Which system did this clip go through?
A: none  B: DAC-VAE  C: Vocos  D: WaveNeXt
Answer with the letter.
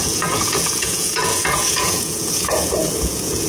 C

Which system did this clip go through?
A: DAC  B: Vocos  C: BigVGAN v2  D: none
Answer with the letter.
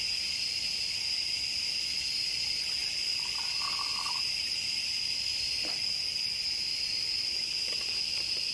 D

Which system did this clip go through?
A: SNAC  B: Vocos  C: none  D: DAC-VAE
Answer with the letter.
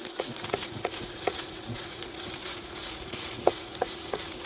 B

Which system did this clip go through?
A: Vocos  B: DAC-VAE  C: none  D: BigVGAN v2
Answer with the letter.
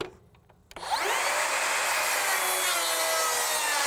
C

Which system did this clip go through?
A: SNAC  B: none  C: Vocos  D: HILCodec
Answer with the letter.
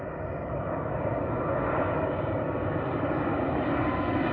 B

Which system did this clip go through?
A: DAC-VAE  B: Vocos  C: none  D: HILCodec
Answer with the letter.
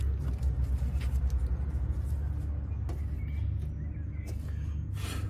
C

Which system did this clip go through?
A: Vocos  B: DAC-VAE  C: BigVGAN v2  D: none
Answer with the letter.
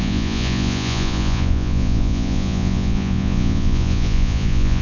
A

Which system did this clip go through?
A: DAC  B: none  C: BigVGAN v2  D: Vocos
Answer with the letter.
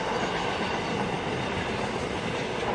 B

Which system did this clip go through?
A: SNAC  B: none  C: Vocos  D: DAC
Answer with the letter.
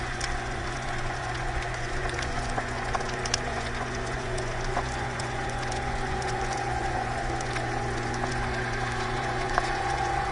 C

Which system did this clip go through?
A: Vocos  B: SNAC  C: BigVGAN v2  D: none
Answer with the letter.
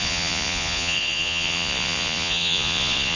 A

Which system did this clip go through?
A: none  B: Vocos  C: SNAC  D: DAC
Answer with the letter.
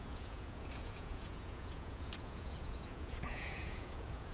B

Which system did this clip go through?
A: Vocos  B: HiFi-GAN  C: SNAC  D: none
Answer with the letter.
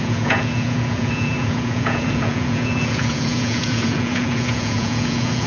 A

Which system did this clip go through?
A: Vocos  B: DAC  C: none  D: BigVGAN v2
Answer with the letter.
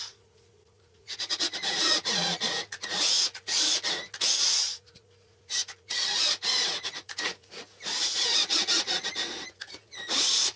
A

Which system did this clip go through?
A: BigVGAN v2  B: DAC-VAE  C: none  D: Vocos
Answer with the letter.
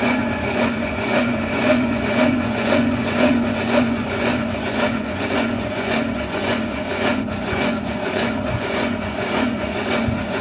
D